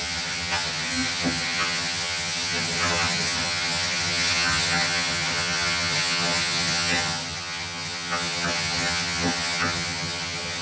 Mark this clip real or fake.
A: fake